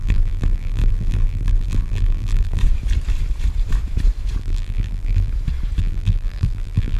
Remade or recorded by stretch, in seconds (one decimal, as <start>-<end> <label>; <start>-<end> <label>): 0.0-2.6 remade; 2.6-4.4 recorded; 4.4-5.3 remade; 5.3-5.8 recorded; 5.8-7.0 remade